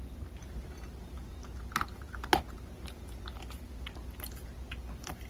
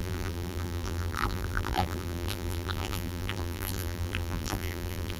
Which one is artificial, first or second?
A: second